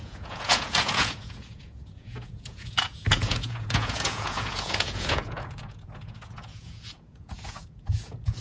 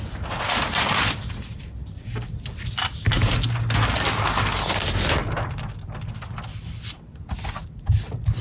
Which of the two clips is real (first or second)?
second